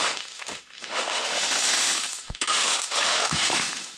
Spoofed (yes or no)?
yes